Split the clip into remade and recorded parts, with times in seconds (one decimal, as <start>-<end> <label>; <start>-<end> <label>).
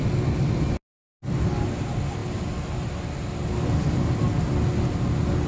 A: 0.0-5.5 recorded